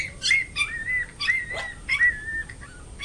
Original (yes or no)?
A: yes